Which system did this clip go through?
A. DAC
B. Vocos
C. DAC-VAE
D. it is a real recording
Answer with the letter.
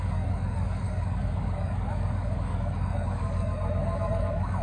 A